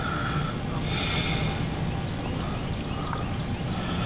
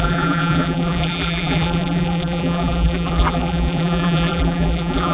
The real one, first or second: first